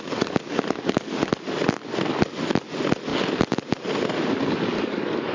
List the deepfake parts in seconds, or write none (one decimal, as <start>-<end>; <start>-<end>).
0.0-1.3; 4.5-5.3